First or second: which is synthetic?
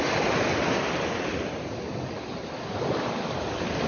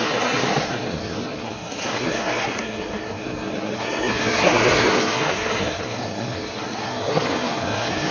second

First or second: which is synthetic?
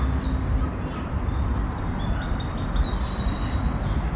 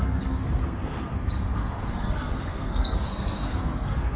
second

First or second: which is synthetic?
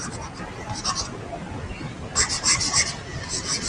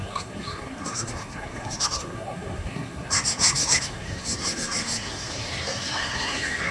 second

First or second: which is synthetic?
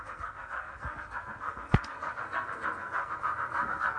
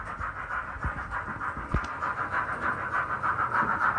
first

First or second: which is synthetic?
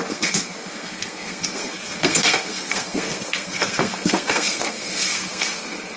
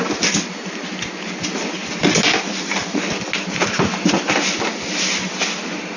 first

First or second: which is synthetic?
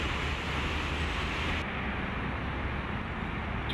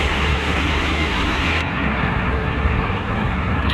second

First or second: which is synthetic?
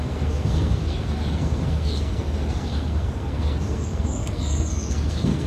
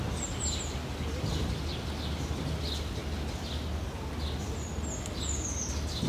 first